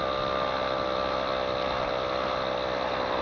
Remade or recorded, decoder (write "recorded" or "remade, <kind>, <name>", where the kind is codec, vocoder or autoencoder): recorded